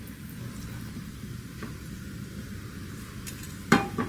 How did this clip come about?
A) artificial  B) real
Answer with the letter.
A